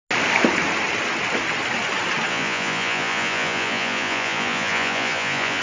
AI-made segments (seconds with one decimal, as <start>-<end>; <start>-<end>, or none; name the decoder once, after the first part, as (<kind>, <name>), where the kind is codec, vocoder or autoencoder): 2.3-5.6 (vocoder, Vocos)